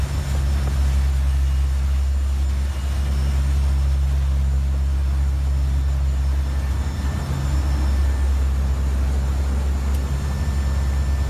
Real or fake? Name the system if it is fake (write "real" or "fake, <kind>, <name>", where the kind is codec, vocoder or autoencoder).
real